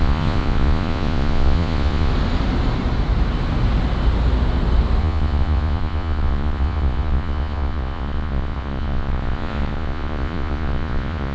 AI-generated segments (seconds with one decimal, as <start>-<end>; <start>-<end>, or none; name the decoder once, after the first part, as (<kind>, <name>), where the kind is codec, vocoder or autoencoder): 0.0-2.1 (vocoder, Vocos); 5.0-11.3

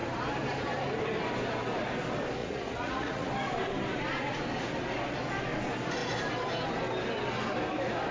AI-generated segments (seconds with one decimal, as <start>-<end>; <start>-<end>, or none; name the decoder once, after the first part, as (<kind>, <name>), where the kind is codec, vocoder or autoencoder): 2.4-3.3 (vocoder, Vocos)

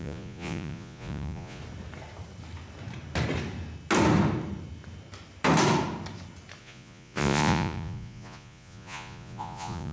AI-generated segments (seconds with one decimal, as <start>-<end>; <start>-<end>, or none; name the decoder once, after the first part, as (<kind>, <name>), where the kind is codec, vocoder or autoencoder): 0.0-1.6 (vocoder, Vocos); 6.6-9.9

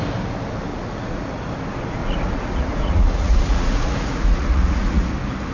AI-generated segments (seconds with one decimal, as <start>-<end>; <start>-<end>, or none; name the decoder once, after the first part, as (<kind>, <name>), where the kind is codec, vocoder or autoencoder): 0.7-1.5 (vocoder, Vocos); 2.0-5.1

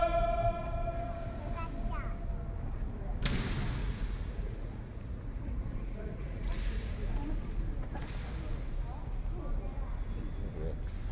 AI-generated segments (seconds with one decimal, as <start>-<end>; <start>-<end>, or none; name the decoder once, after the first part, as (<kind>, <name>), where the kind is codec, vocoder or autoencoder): 3.8-6.9 (vocoder, Vocos)